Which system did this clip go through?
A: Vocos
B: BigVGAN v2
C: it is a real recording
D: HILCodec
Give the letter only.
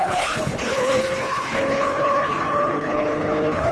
D